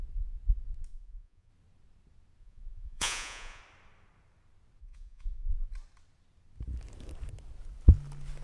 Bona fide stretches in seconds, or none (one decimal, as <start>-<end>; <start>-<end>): 0.0-0.9; 1.5-2.4; 3.6-4.8; 5.5-8.4